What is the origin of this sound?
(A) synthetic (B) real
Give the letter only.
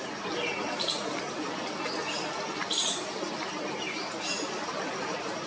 B